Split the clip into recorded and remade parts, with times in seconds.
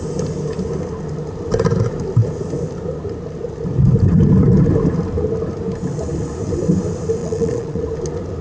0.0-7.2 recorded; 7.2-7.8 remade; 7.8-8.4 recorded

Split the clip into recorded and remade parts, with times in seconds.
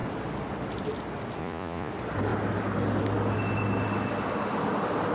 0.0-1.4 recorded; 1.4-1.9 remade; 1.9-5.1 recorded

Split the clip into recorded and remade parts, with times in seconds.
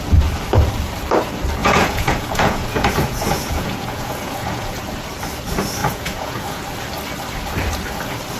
0.0-1.6 recorded; 1.6-4.8 remade; 4.8-5.8 recorded; 5.8-6.6 remade; 6.6-8.4 recorded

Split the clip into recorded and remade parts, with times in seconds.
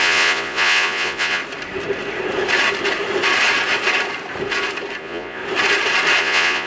0.0-1.4 remade; 1.4-5.0 recorded; 5.0-5.4 remade; 5.4-6.2 recorded; 6.2-6.7 remade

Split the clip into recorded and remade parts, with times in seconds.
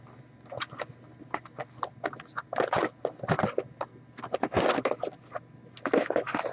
0.0-6.5 recorded